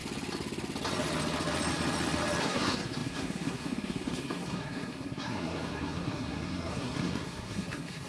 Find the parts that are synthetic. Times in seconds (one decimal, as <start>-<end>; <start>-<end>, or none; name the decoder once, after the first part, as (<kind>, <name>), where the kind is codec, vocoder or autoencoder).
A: 2.4-8.1 (codec, SNAC)